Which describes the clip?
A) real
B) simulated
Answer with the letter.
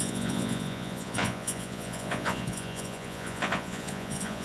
B